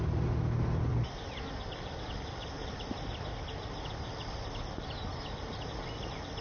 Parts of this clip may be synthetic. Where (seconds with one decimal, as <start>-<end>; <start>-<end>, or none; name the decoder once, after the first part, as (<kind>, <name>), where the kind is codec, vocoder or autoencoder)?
none